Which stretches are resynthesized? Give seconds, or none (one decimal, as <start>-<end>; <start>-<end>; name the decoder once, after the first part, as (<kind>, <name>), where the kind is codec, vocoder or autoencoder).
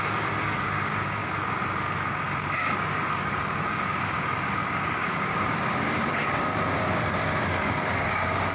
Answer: 0.0-8.5 (codec, DAC)